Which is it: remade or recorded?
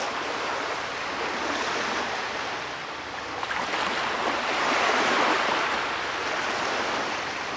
recorded